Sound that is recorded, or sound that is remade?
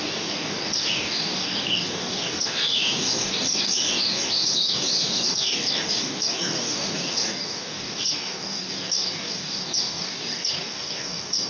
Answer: remade